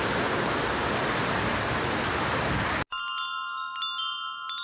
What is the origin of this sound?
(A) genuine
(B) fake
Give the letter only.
A